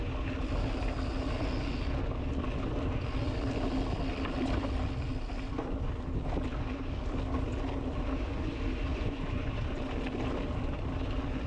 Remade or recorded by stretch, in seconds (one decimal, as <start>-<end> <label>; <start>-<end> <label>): 0.0-8.9 recorded; 8.9-9.5 remade; 9.5-11.5 recorded